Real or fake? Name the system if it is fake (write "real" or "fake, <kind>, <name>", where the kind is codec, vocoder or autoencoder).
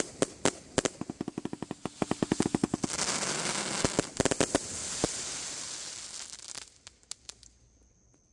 real